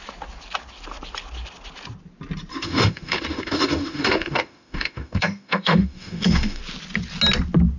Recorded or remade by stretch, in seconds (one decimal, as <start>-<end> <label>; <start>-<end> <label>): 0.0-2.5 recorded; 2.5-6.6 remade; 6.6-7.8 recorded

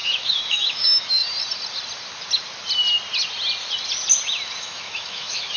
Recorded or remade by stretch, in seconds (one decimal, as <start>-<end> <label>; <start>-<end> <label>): 0.0-1.2 remade; 1.2-4.6 recorded; 4.6-5.6 remade

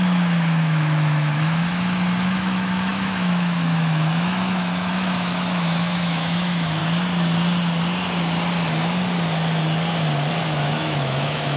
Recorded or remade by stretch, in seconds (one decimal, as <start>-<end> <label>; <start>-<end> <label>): 0.0-6.8 remade; 6.8-10.3 recorded; 10.3-11.6 remade

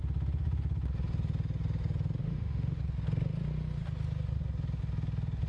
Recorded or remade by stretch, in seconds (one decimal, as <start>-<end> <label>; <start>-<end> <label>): 0.0-2.2 recorded; 2.2-2.8 remade; 2.8-5.5 recorded

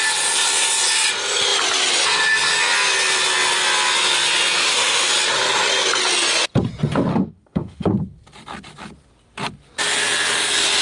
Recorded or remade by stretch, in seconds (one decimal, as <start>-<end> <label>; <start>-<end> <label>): 0.0-4.6 recorded; 4.6-5.1 remade; 5.1-7.1 recorded; 7.1-7.9 remade; 7.9-10.8 recorded

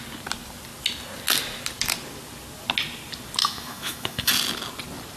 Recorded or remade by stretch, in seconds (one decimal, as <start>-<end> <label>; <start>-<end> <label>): 0.0-3.4 recorded; 3.4-4.3 remade; 4.3-5.2 recorded

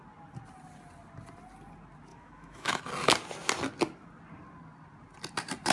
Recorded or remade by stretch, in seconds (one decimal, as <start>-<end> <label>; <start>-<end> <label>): 0.0-2.1 recorded; 2.1-2.8 remade; 2.8-5.7 recorded

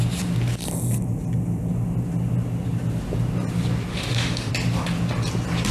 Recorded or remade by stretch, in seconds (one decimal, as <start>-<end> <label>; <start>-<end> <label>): 0.0-3.9 recorded; 3.9-4.5 remade; 4.5-5.7 recorded